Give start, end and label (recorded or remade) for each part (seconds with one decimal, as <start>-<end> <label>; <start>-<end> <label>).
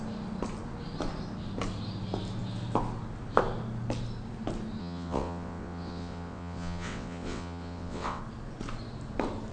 0.0-4.8 recorded; 4.8-8.2 remade; 8.2-9.5 recorded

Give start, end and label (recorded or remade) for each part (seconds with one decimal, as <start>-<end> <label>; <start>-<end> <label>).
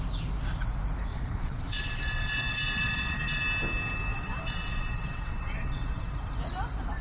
0.0-1.1 recorded; 1.1-3.4 remade; 3.4-4.1 recorded; 4.1-6.1 remade; 6.1-7.0 recorded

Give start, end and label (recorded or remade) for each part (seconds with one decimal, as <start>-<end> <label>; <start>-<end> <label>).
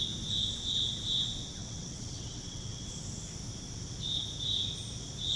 0.0-1.6 recorded; 1.6-2.9 remade; 2.9-5.4 recorded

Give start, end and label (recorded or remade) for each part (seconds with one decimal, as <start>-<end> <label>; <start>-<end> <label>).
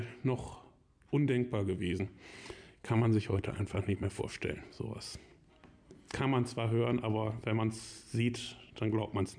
0.0-2.3 recorded; 2.3-4.2 remade; 4.2-9.4 recorded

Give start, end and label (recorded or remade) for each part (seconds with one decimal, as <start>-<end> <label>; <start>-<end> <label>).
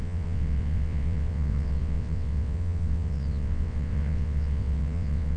0.0-5.4 remade